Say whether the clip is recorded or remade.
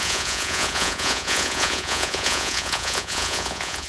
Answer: remade